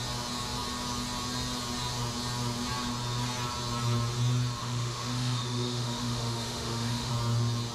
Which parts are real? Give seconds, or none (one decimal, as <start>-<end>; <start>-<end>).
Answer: 0.0-4.6; 7.1-7.7